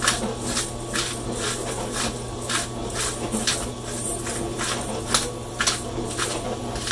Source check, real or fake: real